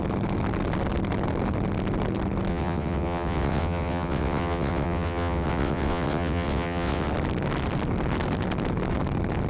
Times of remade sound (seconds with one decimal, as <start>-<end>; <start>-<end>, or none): 2.5-7.1